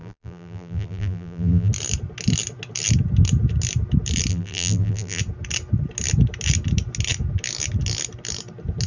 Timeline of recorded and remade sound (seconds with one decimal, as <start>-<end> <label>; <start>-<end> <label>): 0.0-1.7 remade; 1.7-4.3 recorded; 4.3-5.2 remade; 5.2-8.9 recorded